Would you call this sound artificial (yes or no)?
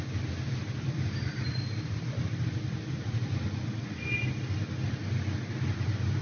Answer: no